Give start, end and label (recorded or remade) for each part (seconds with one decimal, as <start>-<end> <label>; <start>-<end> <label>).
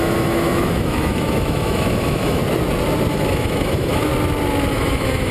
0.0-2.4 remade; 2.4-3.1 recorded; 3.1-4.1 remade; 4.1-4.7 recorded; 4.7-5.3 remade